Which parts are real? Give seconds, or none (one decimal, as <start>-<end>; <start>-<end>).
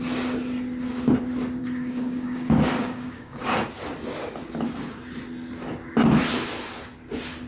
0.0-1.6; 3.6-7.5